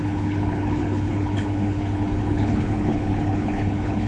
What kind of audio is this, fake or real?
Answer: fake